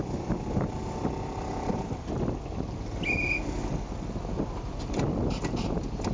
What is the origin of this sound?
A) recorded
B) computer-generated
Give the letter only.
A